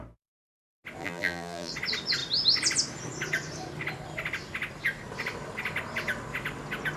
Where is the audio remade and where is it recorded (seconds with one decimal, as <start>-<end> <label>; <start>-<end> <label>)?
0.0-1.0 recorded; 1.0-1.7 remade; 1.7-7.0 recorded